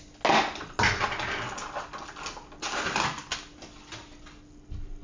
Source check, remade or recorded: recorded